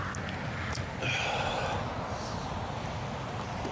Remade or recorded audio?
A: recorded